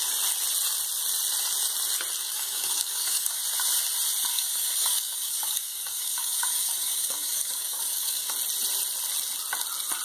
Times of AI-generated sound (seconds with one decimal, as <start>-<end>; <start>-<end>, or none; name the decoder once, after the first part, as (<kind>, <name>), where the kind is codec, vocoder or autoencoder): 2.3-3.4 (codec, DAC); 4.3-8.3